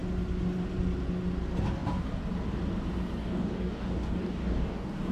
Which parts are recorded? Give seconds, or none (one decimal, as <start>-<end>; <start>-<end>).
0.0-3.2